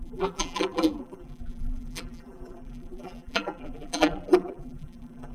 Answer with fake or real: fake